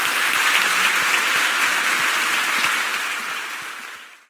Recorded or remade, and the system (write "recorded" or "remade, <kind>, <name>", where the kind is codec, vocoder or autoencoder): recorded